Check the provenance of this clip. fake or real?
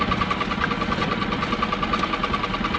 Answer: real